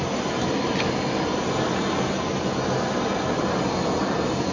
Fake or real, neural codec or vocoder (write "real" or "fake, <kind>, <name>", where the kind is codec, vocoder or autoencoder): real